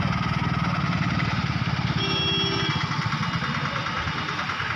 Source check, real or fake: real